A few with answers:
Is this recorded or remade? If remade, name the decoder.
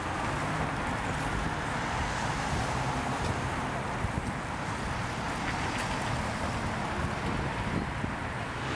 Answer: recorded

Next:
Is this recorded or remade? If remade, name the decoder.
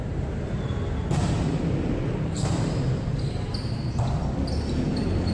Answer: remade, vocoder, BigVGAN v2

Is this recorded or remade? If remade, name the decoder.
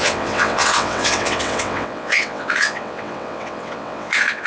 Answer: remade, vocoder, WaveNeXt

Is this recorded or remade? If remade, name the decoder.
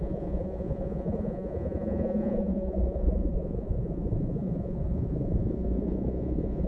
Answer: remade, vocoder, Vocos